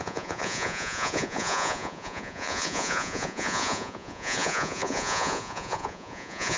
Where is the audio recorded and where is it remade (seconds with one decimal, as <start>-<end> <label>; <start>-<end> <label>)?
0.0-6.6 remade